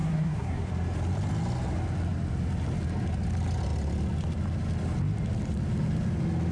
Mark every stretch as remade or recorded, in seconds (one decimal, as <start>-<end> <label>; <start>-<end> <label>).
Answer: 0.0-0.7 remade; 0.7-6.5 recorded